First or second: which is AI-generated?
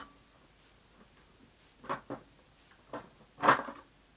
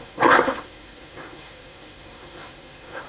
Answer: second